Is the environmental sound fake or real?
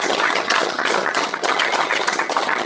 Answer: fake